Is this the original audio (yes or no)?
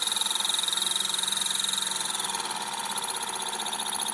yes